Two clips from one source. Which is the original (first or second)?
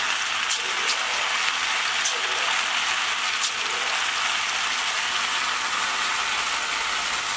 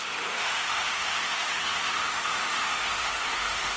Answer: first